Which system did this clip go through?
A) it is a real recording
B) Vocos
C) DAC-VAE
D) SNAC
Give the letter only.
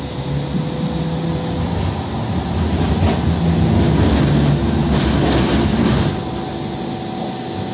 A